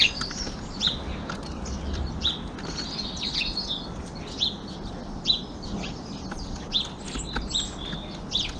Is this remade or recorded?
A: recorded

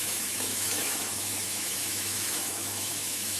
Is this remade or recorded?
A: remade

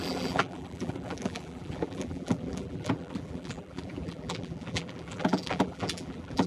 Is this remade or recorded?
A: remade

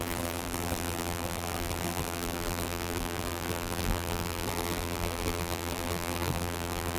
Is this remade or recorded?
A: remade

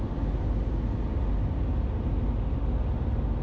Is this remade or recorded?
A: recorded